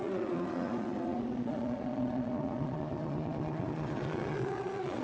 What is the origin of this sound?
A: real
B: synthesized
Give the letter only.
B